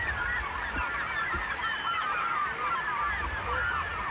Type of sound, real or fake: fake